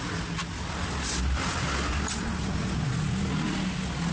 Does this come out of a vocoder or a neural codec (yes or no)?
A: no